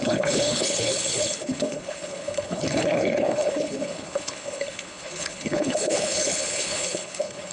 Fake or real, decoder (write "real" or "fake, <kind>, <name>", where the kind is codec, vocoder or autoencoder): fake, codec, HILCodec